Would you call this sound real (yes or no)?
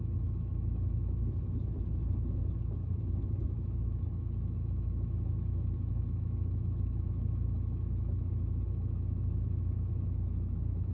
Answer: no